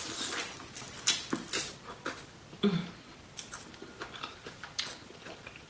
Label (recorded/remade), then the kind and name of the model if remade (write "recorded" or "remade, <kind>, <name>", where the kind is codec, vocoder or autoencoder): recorded